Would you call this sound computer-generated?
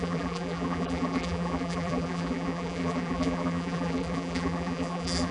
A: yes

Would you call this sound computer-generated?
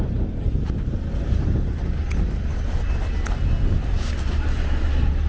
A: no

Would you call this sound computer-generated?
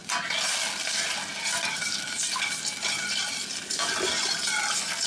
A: no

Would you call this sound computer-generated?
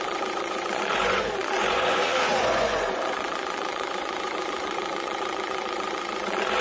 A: yes